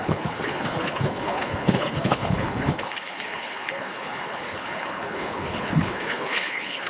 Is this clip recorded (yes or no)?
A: no